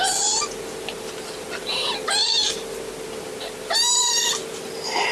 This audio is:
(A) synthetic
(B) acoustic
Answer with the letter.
B